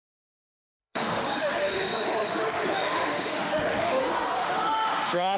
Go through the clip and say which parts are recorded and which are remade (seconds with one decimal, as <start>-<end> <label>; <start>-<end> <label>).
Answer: 0.0-0.8 recorded; 0.8-4.0 remade; 4.0-4.4 recorded; 4.4-5.4 remade